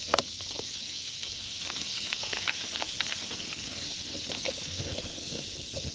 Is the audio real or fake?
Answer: fake